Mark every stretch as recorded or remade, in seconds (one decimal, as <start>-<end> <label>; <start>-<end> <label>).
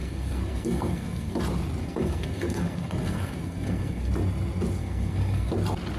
0.0-1.4 remade; 1.4-1.8 recorded; 1.8-4.1 remade; 4.1-4.8 recorded; 4.8-5.5 remade; 5.5-6.0 recorded